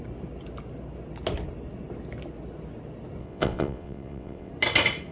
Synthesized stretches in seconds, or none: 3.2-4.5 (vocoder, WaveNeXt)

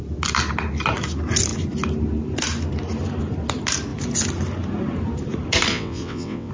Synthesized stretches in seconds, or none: 5.7-6.5 (vocoder, WaveNeXt)

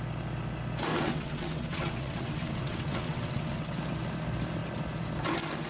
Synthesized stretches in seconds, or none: 0.9-3.8 (vocoder, WaveNeXt)

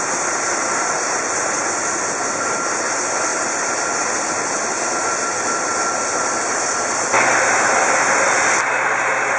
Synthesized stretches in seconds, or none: none